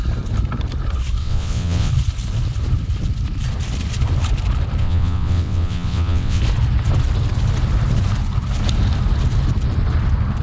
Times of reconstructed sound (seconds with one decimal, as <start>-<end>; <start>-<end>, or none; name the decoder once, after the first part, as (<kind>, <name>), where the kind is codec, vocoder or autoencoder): 1.2-1.9 (vocoder, WaveNeXt); 4.8-6.4